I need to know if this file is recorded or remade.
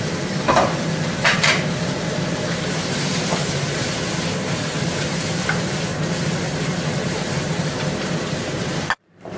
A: remade